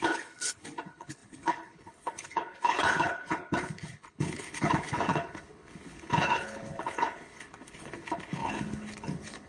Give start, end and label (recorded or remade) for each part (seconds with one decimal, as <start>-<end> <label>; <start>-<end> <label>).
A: 0.0-9.5 remade